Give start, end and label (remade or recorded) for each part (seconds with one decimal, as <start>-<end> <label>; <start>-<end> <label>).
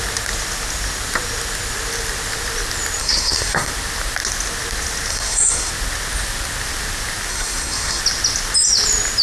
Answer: 0.0-3.0 recorded; 3.0-3.7 remade; 3.7-5.1 recorded; 5.1-5.7 remade; 5.7-7.3 recorded; 7.3-8.0 remade; 8.0-9.2 recorded